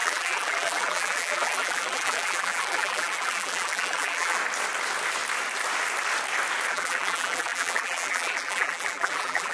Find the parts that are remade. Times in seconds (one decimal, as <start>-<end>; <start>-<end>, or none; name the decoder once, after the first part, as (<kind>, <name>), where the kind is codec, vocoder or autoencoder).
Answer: 0.0-4.4 (vocoder, BigVGAN v2); 6.7-9.5